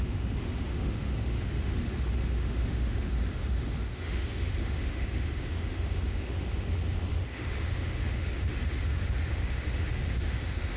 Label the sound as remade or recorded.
remade